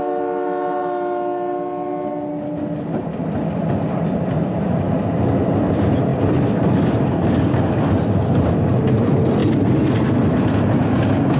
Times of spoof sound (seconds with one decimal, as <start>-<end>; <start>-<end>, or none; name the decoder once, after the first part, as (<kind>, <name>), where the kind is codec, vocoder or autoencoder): none